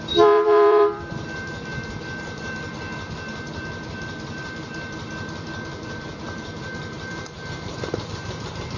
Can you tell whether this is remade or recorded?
remade